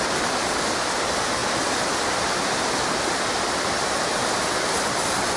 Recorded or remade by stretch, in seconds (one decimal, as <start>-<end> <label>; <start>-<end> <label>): 0.0-5.4 recorded